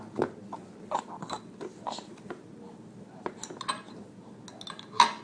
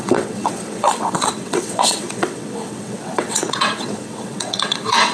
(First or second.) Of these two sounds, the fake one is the second